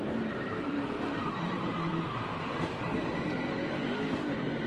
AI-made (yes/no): yes